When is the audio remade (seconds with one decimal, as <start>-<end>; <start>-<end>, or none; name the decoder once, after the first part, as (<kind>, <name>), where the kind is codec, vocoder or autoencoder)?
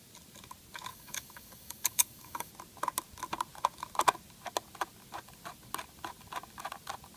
0.9-2.5 (codec, DAC)